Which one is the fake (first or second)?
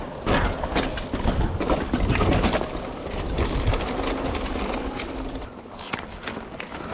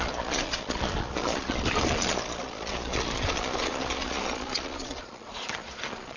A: second